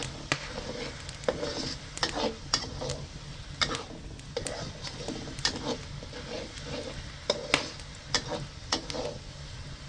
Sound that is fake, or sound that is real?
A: real